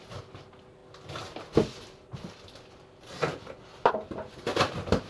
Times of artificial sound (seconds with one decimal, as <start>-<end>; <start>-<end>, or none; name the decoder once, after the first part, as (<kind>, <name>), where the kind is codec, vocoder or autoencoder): none